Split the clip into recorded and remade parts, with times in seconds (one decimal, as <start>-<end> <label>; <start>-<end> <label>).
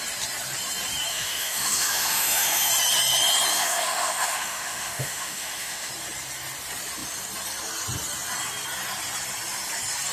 0.0-1.1 recorded; 1.1-2.7 remade; 2.7-3.5 recorded; 3.5-5.9 remade; 5.9-10.1 recorded